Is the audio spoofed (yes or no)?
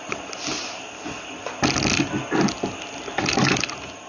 no